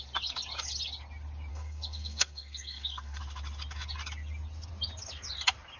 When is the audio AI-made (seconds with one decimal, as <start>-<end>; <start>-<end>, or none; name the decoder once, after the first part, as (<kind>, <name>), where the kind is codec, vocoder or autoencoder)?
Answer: 1.5-3.2 (codec, SNAC)